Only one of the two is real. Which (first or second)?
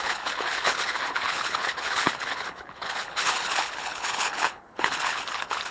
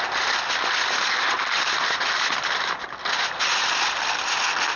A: second